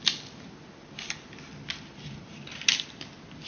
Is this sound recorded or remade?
recorded